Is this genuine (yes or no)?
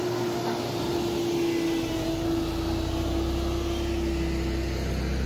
yes